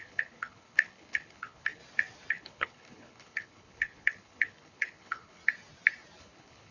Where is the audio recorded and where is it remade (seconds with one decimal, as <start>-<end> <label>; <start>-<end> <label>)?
0.0-1.8 remade; 1.8-2.3 recorded; 2.3-5.4 remade; 5.4-6.2 recorded; 6.2-6.7 remade

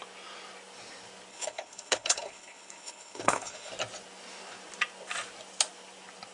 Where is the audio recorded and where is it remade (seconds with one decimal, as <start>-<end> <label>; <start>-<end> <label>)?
0.0-1.3 recorded; 1.3-3.7 remade; 3.7-6.3 recorded

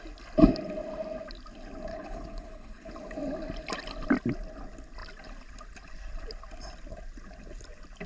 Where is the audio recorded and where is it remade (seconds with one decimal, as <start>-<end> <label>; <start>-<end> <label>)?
0.0-1.9 recorded; 1.9-2.9 remade; 2.9-8.1 recorded

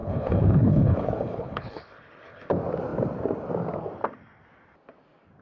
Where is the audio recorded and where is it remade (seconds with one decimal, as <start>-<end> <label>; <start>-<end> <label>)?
0.0-2.5 remade; 2.5-5.4 recorded

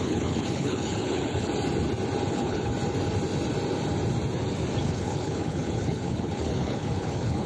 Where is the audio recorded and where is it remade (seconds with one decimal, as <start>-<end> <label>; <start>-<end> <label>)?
0.0-1.5 remade; 1.5-2.3 recorded; 2.3-2.7 remade; 2.7-4.8 recorded; 4.8-7.5 remade

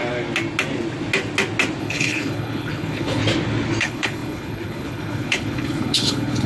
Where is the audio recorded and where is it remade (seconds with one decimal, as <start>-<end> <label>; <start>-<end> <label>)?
0.0-1.8 recorded; 1.8-3.2 remade; 3.2-3.8 recorded; 3.8-6.5 remade

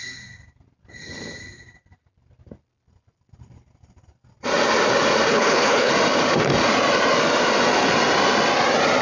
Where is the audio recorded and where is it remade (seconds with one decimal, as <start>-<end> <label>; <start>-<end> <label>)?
0.0-5.3 recorded; 5.3-5.9 remade; 5.9-9.0 recorded